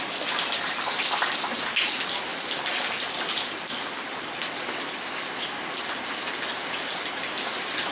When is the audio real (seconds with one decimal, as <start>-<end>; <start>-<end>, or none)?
0.0-7.9